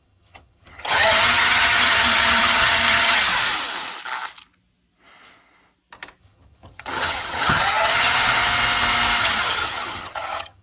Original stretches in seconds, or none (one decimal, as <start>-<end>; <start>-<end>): 3.3-6.2; 8.4-9.2